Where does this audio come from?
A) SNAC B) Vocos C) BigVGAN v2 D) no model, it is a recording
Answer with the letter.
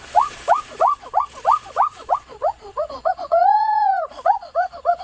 B